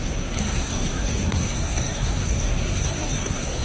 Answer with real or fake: fake